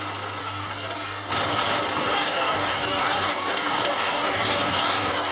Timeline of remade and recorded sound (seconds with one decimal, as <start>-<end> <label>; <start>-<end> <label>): 0.0-0.4 recorded; 0.4-1.3 remade; 1.3-2.0 recorded; 2.0-5.3 remade